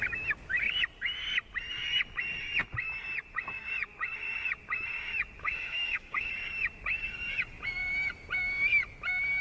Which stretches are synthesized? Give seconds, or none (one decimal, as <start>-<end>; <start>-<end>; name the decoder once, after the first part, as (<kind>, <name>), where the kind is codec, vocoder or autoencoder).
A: 5.4-6.3 (autoencoder, DAC-VAE)